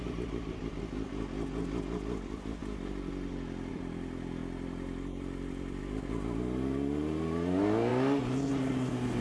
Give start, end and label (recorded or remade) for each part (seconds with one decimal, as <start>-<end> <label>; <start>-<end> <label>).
0.0-4.4 recorded; 4.4-5.8 remade; 5.8-9.2 recorded